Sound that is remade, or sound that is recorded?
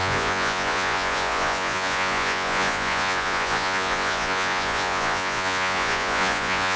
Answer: remade